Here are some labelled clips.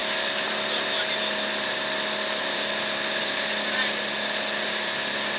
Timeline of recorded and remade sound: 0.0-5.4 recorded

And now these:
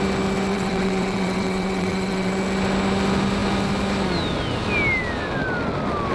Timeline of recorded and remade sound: 0.0-0.5 recorded; 0.5-2.3 remade; 2.3-6.1 recorded

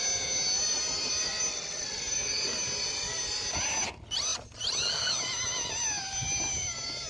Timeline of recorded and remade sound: 0.0-1.5 recorded; 1.5-2.0 remade; 2.0-7.1 recorded